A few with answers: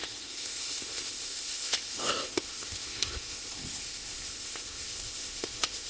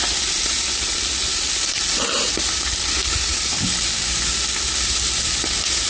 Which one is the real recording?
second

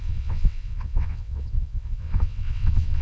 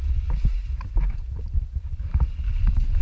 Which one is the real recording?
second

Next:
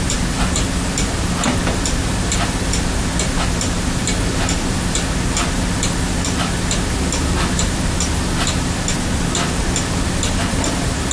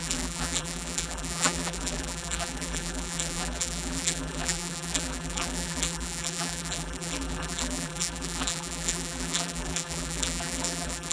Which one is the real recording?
first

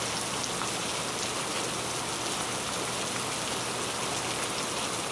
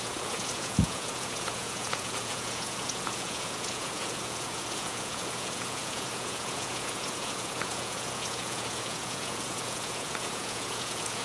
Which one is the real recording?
first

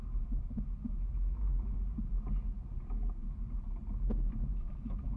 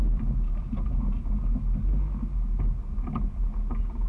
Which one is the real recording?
second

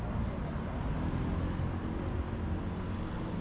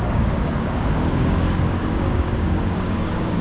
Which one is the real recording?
first